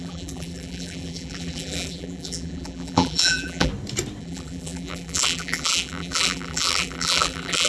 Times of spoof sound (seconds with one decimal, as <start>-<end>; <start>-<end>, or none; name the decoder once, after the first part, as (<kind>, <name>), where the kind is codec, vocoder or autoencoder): 0.0-3.7 (vocoder, BigVGAN v2); 4.2-7.7